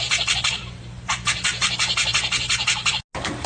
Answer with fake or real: real